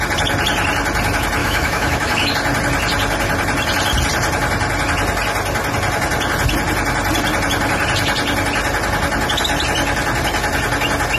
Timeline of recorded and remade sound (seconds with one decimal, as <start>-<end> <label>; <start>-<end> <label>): 0.0-1.4 recorded; 1.4-2.3 remade; 2.3-11.2 recorded